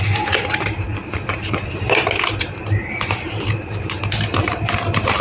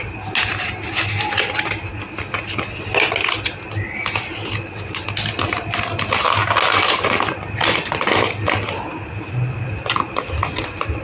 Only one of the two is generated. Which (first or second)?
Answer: first